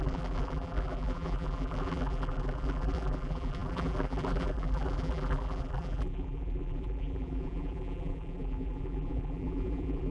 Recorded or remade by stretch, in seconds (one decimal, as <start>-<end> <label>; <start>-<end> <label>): 0.0-10.1 remade